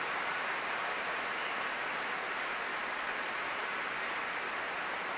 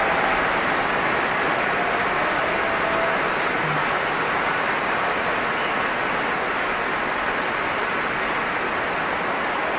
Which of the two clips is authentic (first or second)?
second